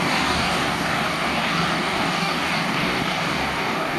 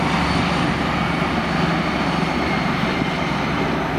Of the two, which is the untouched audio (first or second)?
second